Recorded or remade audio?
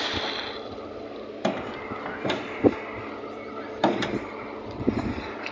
recorded